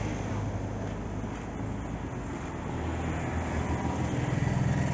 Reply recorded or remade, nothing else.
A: recorded